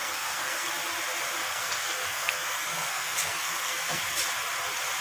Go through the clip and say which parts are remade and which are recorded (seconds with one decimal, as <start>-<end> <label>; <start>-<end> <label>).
0.0-0.7 remade; 0.7-1.4 recorded; 1.4-4.0 remade; 4.0-5.0 recorded